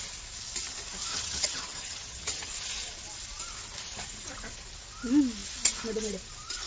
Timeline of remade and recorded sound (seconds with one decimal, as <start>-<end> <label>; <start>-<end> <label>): 0.0-1.1 recorded; 1.1-2.5 remade; 2.5-6.7 recorded